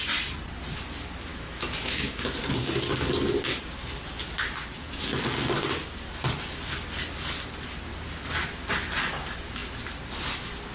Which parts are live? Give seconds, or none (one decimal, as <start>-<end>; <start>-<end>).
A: 0.0-1.3; 2.4-10.7